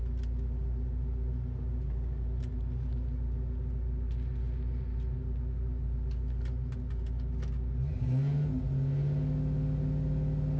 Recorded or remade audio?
recorded